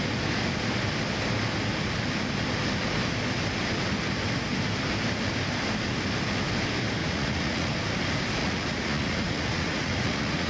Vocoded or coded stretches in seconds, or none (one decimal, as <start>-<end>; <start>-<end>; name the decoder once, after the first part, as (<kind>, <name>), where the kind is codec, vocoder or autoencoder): 7.0-7.7 (vocoder, Vocos); 8.4-10.5